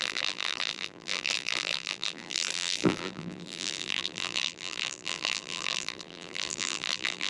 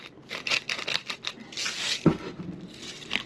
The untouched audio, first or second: second